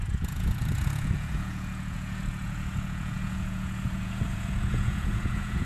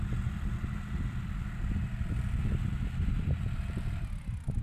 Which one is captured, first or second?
second